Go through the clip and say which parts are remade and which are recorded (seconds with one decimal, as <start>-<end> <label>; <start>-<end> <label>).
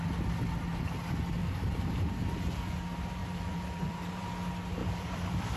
0.0-1.4 recorded; 1.4-2.6 remade; 2.6-3.2 recorded; 3.2-4.3 remade; 4.3-4.8 recorded; 4.8-5.6 remade